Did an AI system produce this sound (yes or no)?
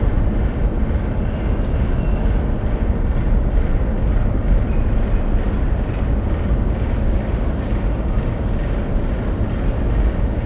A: no